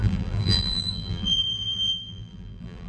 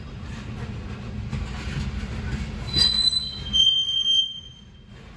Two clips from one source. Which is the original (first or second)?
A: second